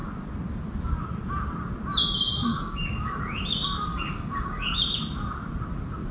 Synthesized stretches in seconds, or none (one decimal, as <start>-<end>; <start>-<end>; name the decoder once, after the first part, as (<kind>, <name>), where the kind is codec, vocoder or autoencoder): 2.5-3.1 (codec, DAC); 3.9-4.6